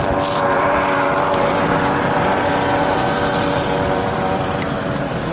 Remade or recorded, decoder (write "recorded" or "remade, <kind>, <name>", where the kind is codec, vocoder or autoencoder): remade, vocoder, BigVGAN v2